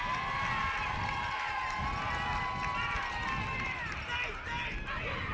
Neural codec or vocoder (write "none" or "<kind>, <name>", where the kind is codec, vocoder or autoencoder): none